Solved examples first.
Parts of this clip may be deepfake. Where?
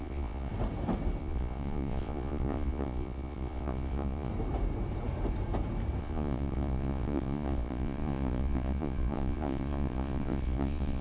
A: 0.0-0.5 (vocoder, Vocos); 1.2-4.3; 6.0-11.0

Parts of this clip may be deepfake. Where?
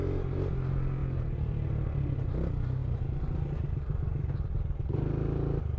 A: none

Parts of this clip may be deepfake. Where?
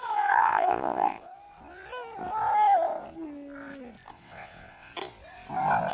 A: 0.0-1.3 (vocoder, Vocos); 4.1-4.9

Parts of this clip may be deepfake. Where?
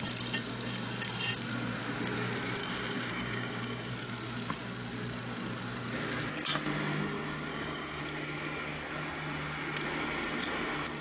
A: 2.6-3.9 (codec, DAC); 7.5-8.0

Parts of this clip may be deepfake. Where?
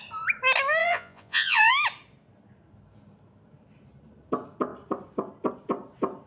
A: 0.8-1.7 (vocoder, Vocos)